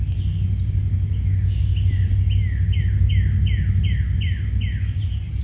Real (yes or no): yes